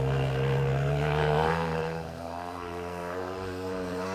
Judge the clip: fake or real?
fake